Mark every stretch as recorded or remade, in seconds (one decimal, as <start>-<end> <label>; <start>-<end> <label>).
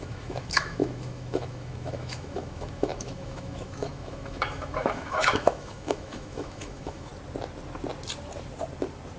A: 0.0-7.1 remade; 7.1-9.2 recorded